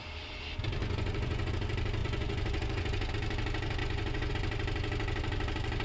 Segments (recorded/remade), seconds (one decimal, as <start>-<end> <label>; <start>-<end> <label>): 0.0-0.8 recorded; 0.8-1.5 remade; 1.5-2.0 recorded; 2.0-3.1 remade; 3.1-3.8 recorded; 3.8-4.3 remade; 4.3-5.8 recorded